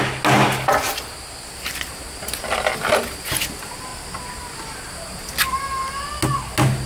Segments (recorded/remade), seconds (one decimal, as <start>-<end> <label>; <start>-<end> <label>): 0.0-6.9 recorded

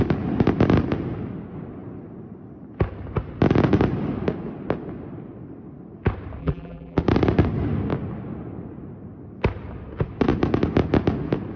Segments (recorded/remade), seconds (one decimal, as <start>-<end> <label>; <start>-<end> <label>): 0.0-6.4 recorded; 6.4-7.0 remade; 7.0-11.6 recorded

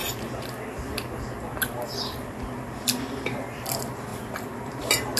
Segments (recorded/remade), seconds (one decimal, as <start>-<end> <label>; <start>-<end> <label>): 0.0-3.1 recorded; 3.1-5.2 remade

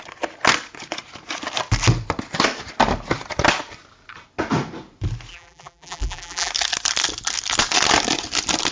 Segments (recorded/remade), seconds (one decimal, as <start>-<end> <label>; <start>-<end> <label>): 0.0-5.3 recorded; 5.3-6.5 remade; 6.5-8.7 recorded

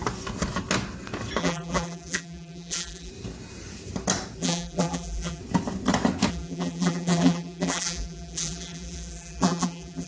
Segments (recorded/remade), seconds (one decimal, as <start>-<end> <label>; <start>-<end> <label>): 0.0-1.4 recorded; 1.4-3.1 remade; 3.1-4.4 recorded; 4.4-5.4 remade; 5.4-6.3 recorded; 6.3-10.1 remade

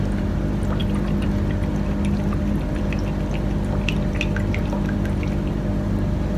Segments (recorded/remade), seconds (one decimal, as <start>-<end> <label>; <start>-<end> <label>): 0.0-6.4 recorded

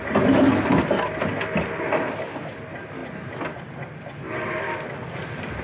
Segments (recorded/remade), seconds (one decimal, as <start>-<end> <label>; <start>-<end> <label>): 0.0-3.0 recorded; 3.0-3.6 remade; 3.6-5.6 recorded

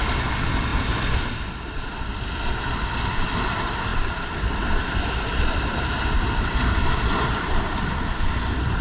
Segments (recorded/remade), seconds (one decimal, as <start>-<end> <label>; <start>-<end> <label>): 0.0-3.9 recorded; 3.9-6.2 remade; 6.2-6.8 recorded; 6.8-8.8 remade